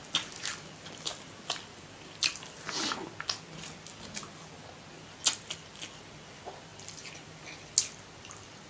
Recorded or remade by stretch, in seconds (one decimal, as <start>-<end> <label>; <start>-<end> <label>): 0.0-1.1 recorded; 1.1-2.8 remade; 2.8-6.7 recorded; 6.7-7.7 remade; 7.7-8.7 recorded